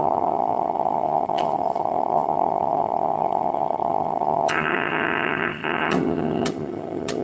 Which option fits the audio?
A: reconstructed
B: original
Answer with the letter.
A